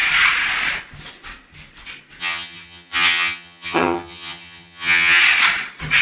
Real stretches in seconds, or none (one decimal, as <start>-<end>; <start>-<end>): 0.0-2.2; 5.2-6.0